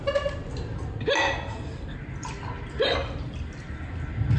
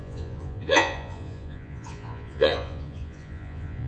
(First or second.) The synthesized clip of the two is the second